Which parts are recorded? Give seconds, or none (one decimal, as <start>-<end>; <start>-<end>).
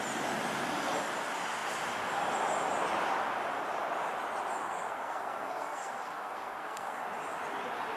0.0-4.6; 7.0-8.0